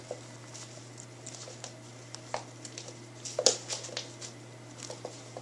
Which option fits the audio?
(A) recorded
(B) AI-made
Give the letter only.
A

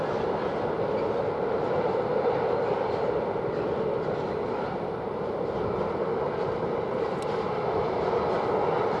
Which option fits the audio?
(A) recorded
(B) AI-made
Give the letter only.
A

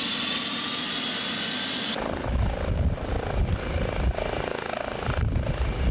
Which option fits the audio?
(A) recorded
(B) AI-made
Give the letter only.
A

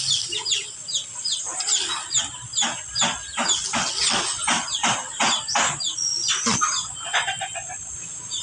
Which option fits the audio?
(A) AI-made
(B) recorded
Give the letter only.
B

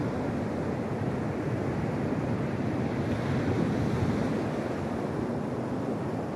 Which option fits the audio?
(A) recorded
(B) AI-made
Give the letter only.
A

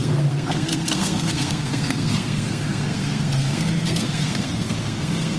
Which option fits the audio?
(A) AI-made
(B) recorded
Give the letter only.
A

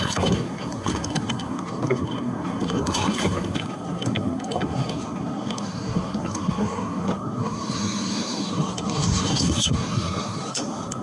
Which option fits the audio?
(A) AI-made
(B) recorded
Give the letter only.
A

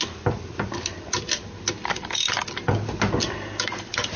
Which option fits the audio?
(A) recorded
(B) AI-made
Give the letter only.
A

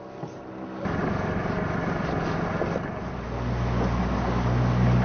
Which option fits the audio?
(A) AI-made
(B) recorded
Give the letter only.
B